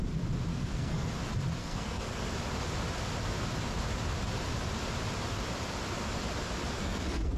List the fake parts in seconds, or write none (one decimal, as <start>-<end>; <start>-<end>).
0.5-1.1; 1.6-2.2; 6.8-7.4